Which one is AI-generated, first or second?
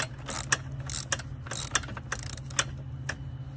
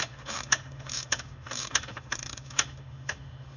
second